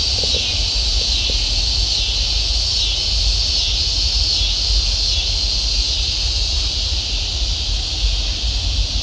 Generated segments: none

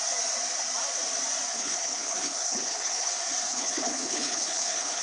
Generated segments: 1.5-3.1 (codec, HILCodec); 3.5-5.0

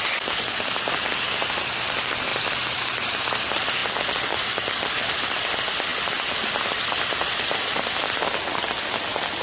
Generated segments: 2.3-3.1 (vocoder, BigVGAN v2)

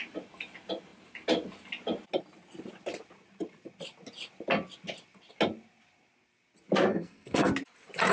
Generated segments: 6.9-7.5 (codec, SNAC)

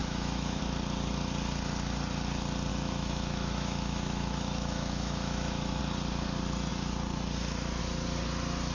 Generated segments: 0.0-0.6 (autoencoder, DAC-VAE); 2.7-5.8